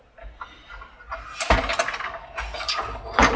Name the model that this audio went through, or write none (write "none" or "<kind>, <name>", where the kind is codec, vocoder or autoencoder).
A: none